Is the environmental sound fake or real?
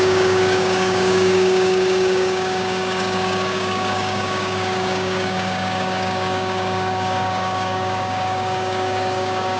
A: fake